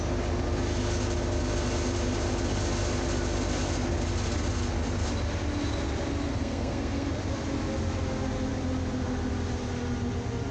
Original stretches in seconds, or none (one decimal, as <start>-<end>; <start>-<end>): 0.0-6.3; 7.2-10.5